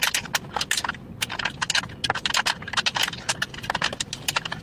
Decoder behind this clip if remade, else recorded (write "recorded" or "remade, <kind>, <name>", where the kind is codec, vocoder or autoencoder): recorded